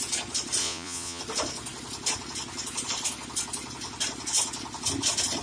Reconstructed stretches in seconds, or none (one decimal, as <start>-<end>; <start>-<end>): 0.6-1.2